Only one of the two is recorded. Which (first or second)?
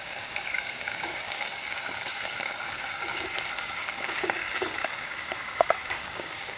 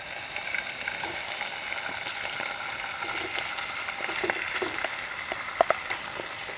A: second